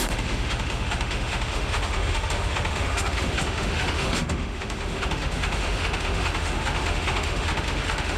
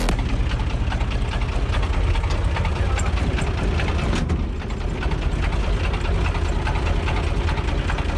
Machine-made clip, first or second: first